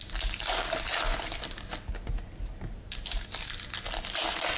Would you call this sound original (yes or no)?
yes